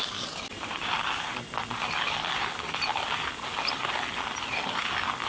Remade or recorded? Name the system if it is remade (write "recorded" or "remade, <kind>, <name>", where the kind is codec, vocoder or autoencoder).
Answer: recorded